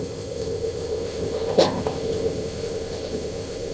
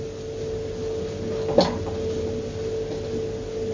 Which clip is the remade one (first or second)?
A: first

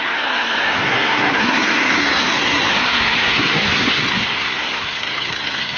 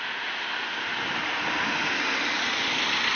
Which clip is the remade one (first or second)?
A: first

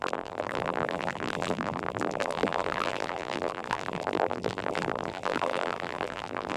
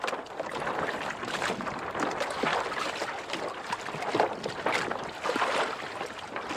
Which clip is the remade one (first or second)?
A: first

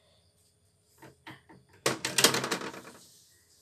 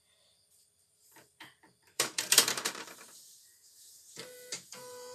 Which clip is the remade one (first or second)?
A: second